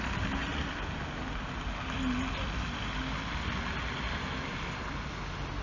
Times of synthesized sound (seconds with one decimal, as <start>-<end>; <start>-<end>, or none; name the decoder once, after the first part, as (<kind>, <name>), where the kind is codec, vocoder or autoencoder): none